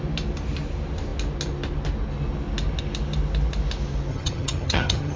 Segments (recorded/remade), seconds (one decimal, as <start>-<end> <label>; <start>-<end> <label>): 0.0-4.1 recorded; 4.1-5.2 remade